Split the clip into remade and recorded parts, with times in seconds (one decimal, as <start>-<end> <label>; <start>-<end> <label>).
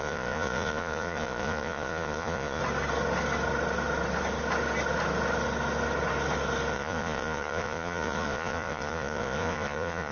0.0-2.6 remade; 2.6-6.7 recorded; 6.7-10.1 remade